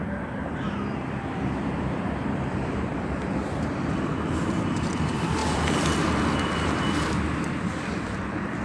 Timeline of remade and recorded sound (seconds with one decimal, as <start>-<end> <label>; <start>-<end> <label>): 0.0-8.6 remade